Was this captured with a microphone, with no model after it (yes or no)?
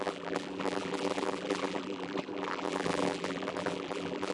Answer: no